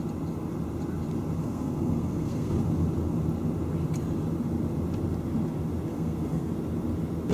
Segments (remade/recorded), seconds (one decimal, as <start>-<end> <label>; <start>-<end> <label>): 0.0-1.4 recorded; 1.4-2.6 remade; 2.6-5.9 recorded; 5.9-6.5 remade; 6.5-7.3 recorded